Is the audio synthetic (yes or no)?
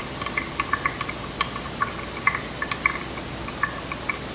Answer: no